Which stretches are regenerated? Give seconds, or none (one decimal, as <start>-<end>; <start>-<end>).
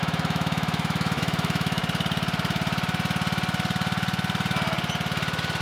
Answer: 0.0-1.8